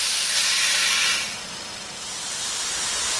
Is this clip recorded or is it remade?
recorded